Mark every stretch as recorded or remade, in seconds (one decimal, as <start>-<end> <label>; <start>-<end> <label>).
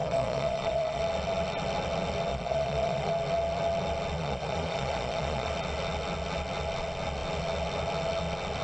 0.0-1.0 remade; 1.0-2.3 recorded; 2.3-3.1 remade; 3.1-4.2 recorded; 4.2-5.5 remade; 5.5-8.6 recorded